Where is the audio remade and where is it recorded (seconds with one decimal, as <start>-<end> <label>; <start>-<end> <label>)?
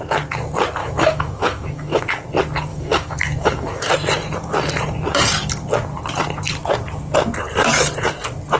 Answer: 0.0-0.8 recorded; 0.8-2.0 remade; 2.0-2.7 recorded; 2.7-3.9 remade; 3.9-8.6 recorded